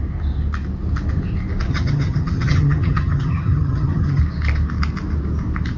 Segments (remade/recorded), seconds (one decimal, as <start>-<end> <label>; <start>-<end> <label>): 0.0-1.7 recorded; 1.7-4.2 remade; 4.2-5.8 recorded